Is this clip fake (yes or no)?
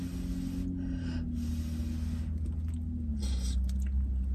no